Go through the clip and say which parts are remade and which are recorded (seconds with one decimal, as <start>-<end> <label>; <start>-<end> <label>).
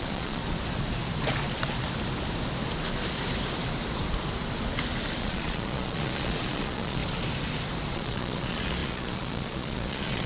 0.0-0.4 remade; 0.4-5.2 recorded; 5.2-7.0 remade; 7.0-7.9 recorded; 7.9-10.3 remade